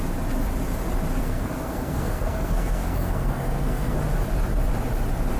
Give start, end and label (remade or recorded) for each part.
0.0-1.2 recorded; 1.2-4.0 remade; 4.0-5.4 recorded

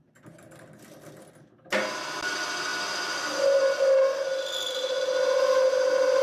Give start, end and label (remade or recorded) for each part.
0.0-6.2 recorded

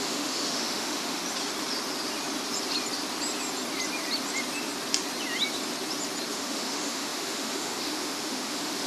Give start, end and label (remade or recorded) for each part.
0.0-1.2 remade; 1.2-6.3 recorded; 6.3-8.9 remade

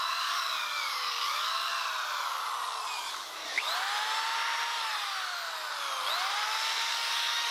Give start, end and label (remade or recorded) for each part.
0.0-1.7 remade; 1.7-3.1 recorded; 3.1-3.7 remade; 3.7-6.9 recorded; 6.9-7.5 remade

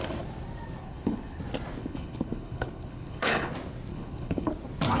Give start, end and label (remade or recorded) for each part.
0.0-0.8 recorded; 0.8-1.4 remade; 1.4-1.8 recorded; 1.8-3.5 remade; 3.5-3.9 recorded; 3.9-4.5 remade; 4.5-5.0 recorded